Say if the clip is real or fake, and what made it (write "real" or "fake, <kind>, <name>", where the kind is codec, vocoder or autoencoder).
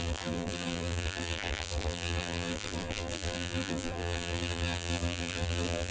fake, vocoder, BigVGAN v2